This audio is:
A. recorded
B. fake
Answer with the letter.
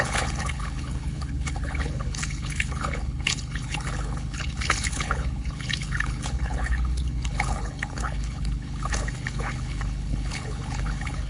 B